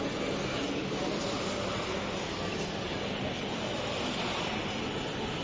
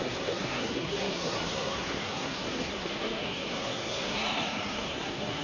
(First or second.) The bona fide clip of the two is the first